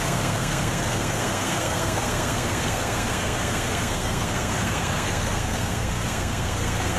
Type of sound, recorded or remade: remade